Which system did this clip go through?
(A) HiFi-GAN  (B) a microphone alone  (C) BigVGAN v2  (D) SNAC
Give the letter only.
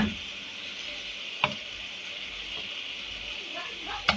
B